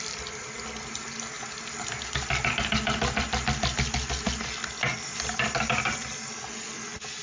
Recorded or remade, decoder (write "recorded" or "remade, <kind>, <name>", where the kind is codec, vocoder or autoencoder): recorded